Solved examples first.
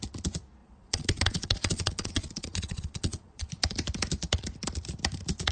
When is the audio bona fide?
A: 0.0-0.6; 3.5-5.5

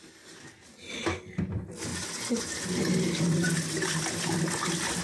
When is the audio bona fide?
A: 0.0-5.0

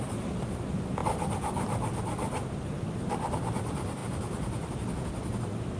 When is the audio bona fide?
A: 4.0-5.8

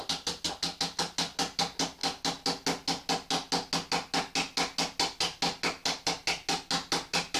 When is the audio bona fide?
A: 0.0-7.4

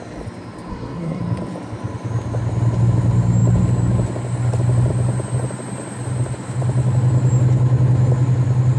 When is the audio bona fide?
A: 0.0-0.7; 1.2-8.8

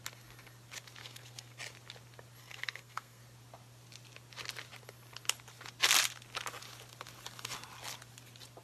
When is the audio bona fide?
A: 0.0-1.0; 1.6-2.4; 3.2-8.6